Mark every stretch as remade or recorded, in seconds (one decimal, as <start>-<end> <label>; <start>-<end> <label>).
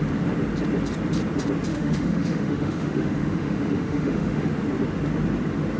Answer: 0.0-1.7 recorded; 1.7-4.5 remade; 4.5-5.8 recorded